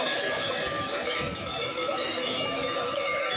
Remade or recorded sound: remade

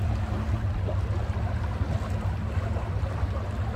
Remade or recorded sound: recorded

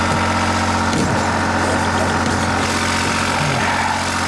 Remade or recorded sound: recorded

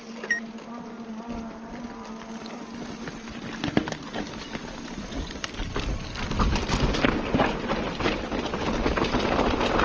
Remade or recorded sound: recorded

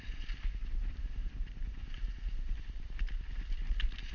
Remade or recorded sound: recorded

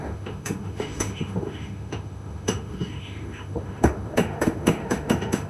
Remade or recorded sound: remade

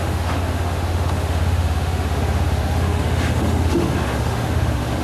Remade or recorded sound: remade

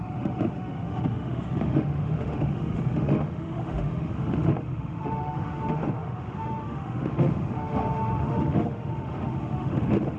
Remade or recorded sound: remade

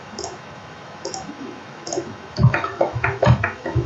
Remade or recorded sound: remade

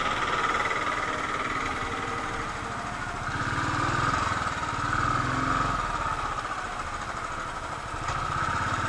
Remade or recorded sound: recorded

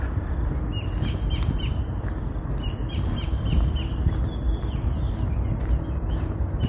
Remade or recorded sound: recorded